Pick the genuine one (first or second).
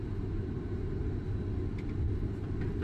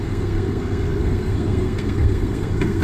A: first